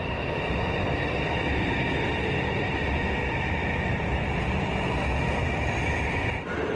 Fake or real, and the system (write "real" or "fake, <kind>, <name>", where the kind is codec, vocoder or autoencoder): real